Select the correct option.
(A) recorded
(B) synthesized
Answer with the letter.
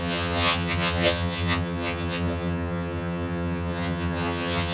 B